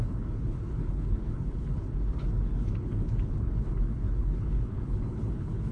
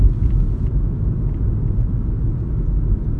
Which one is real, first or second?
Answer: second